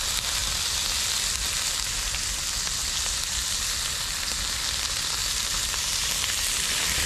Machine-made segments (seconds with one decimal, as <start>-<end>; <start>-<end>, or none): 5.2-7.1